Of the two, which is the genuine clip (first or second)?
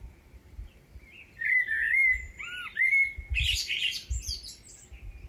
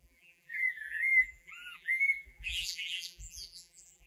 first